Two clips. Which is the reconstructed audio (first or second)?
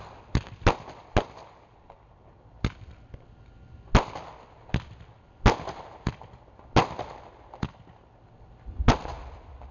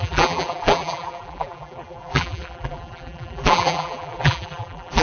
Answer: second